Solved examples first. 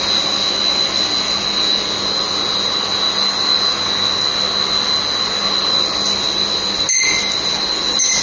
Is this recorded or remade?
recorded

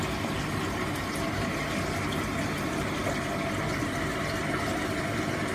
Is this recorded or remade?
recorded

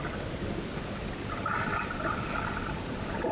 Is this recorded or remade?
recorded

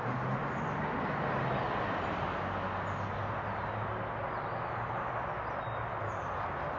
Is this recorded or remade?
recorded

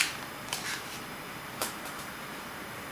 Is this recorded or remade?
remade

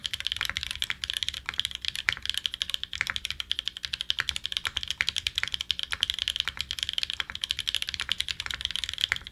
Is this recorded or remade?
remade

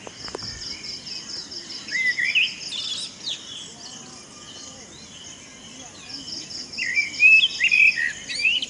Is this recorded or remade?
recorded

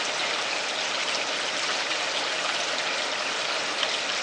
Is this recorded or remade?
recorded